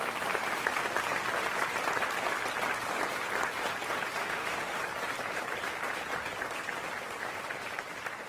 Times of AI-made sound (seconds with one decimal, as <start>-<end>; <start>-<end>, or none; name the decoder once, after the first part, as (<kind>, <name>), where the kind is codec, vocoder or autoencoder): 4.2-4.8 (autoencoder, DAC-VAE)